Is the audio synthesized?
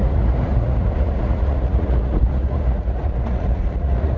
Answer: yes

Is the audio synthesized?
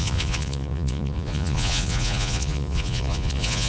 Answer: yes